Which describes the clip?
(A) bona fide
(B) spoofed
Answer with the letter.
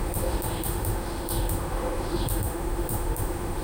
B